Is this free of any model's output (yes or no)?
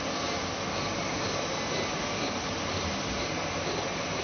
yes